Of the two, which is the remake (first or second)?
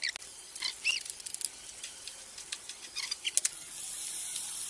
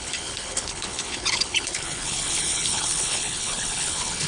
second